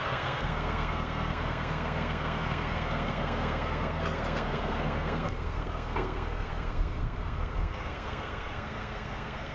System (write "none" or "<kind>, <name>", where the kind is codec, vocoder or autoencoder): codec, SNAC